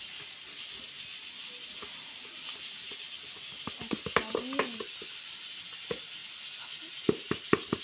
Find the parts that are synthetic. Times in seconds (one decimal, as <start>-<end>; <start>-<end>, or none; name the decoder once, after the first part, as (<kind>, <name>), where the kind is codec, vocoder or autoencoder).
none